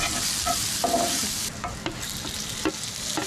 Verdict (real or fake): real